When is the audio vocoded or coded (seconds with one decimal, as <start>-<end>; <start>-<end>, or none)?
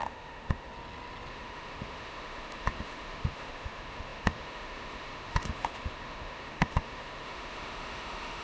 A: 0.0-0.7; 1.3-8.4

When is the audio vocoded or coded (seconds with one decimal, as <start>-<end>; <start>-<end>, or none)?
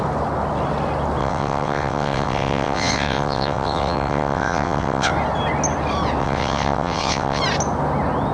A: 1.2-5.1; 6.2-7.4